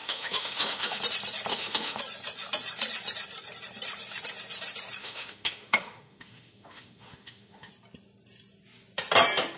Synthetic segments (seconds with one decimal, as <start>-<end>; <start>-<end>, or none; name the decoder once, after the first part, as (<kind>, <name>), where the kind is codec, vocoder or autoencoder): 0.0-1.0 (autoencoder, DAC-VAE); 1.5-2.0; 5.0-7.7